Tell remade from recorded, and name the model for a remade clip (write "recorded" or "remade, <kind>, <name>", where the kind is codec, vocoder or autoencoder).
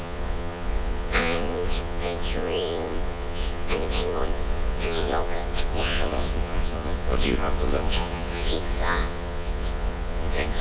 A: remade, vocoder, Vocos